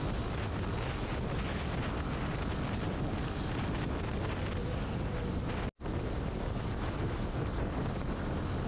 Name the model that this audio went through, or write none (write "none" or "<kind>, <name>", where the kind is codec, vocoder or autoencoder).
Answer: none